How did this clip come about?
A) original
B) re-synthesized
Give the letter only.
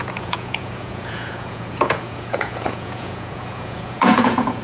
B